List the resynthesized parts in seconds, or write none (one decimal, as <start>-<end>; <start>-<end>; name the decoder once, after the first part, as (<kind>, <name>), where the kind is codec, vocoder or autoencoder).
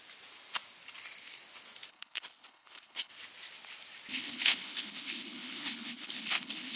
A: 1.9-3.1 (codec, HILCodec); 4.1-6.8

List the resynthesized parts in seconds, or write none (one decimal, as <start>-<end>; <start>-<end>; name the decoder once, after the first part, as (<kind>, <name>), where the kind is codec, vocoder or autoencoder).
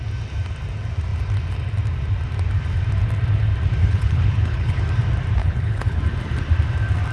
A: 3.8-4.8 (codec, HILCodec); 5.4-6.0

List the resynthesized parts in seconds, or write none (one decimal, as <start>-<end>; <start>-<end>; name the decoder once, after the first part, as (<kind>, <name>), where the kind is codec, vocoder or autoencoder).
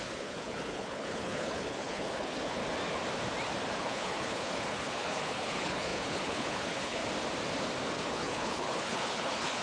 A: 0.0-2.6 (codec, HILCodec); 3.8-7.0; 7.9-9.6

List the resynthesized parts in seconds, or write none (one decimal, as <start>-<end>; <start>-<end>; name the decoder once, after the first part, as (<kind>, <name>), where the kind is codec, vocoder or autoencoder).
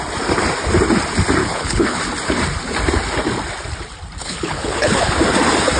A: 1.4-2.0 (codec, HILCodec); 4.2-5.1